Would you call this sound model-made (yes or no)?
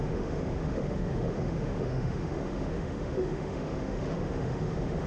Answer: yes